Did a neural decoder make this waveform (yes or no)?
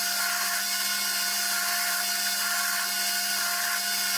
no